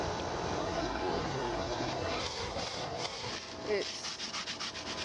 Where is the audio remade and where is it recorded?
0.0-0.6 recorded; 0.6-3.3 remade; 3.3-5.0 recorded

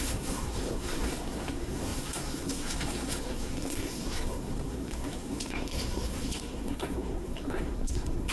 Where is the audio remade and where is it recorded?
0.0-8.3 remade

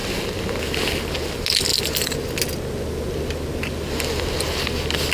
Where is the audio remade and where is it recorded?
0.0-5.1 recorded

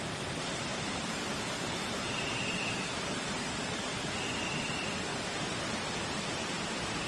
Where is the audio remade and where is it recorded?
0.0-7.1 recorded

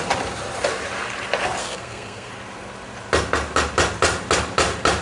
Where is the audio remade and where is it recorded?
0.0-1.6 recorded; 1.6-2.3 remade; 2.3-5.0 recorded